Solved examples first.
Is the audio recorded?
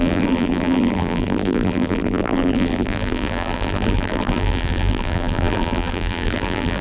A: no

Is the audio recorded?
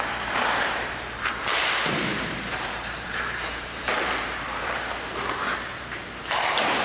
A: no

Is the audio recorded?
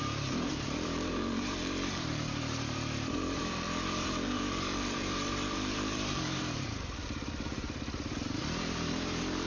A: no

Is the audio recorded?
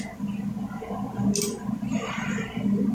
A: yes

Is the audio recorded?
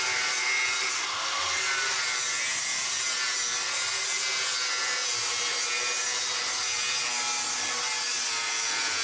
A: yes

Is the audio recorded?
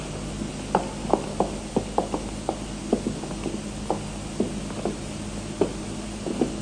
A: yes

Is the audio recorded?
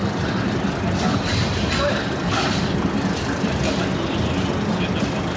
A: yes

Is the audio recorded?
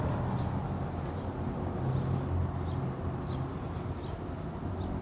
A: yes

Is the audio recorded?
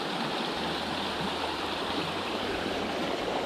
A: no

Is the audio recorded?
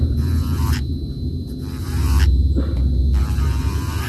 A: no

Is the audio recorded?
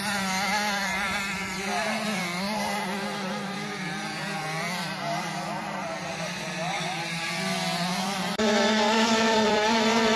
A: no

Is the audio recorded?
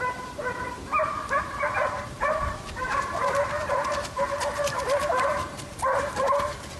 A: no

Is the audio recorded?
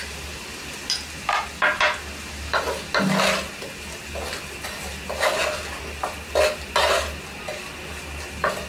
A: yes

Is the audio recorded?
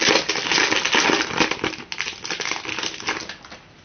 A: yes